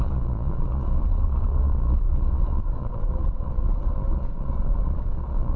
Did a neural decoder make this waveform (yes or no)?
yes